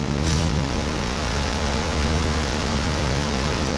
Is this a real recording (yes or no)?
no